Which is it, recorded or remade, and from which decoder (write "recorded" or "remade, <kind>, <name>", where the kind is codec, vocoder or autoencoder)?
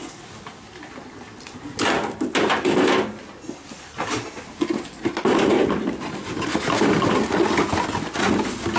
recorded